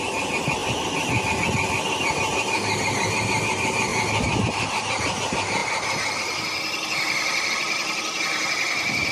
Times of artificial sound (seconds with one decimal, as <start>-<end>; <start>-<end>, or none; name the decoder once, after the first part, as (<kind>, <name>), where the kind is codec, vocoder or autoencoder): none

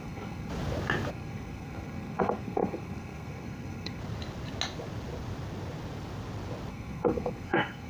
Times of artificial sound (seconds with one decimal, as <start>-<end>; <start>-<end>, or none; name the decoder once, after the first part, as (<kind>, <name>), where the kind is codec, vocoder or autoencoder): 0.0-0.5 (codec, SNAC); 1.1-4.0; 6.7-7.9

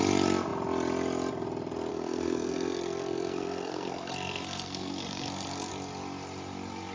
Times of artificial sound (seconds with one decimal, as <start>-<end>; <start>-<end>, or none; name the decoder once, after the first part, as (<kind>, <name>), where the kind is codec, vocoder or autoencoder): 1.9-5.7 (codec, SNAC)

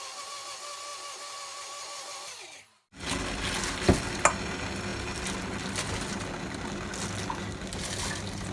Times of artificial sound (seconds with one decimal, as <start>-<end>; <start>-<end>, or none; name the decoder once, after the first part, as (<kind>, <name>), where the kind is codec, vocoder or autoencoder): none

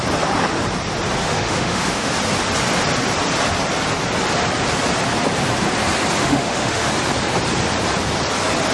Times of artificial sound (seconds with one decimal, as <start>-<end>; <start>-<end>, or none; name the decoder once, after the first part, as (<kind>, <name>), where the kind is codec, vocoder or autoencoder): 1.2-2.1 (autoencoder, DAC-VAE); 6.2-6.9

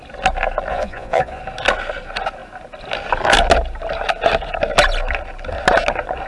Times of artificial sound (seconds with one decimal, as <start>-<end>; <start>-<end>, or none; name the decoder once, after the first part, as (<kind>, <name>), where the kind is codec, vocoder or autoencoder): 0.7-1.4 (vocoder, Vocos)